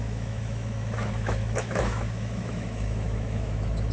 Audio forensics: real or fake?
fake